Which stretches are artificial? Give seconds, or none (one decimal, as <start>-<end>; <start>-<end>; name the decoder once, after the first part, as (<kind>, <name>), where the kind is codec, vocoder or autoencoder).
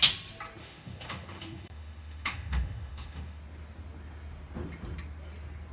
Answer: 0.6-3.4 (autoencoder, DAC-VAE)